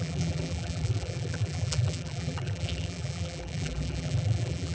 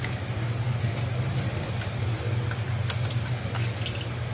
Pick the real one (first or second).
second